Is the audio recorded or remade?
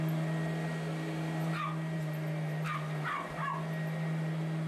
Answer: recorded